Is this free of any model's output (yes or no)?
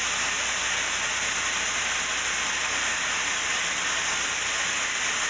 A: yes